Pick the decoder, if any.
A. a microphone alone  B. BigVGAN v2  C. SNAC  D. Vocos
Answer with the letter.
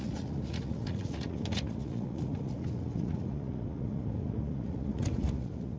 D